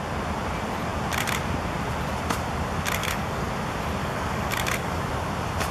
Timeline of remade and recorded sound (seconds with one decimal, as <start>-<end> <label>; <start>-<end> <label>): 0.0-3.0 recorded; 3.0-3.5 remade; 3.5-4.0 recorded; 4.0-5.1 remade; 5.1-5.7 recorded